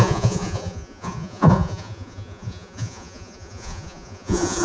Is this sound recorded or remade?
remade